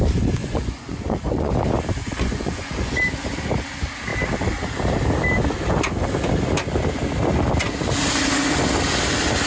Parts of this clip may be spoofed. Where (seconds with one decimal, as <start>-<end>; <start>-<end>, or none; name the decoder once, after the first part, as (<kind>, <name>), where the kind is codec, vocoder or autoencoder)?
0.4-1.5 (vocoder, Vocos); 2.0-3.0